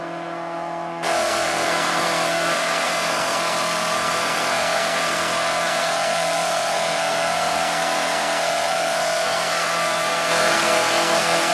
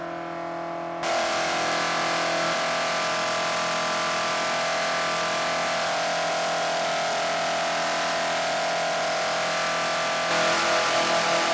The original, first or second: second